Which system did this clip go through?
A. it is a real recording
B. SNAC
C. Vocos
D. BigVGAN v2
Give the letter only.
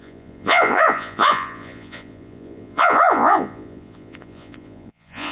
C